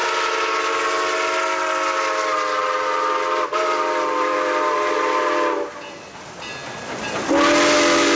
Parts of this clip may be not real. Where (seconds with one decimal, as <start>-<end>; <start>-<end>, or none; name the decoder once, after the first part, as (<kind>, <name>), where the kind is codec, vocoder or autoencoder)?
none